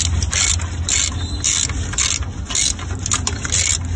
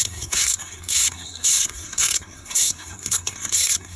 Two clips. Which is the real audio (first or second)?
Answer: first